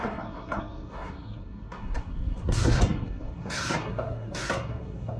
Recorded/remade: remade